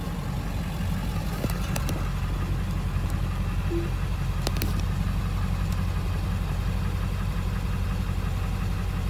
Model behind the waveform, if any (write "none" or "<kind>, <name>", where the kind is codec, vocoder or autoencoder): none